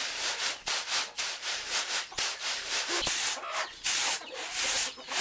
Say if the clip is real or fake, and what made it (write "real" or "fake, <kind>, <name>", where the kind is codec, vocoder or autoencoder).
real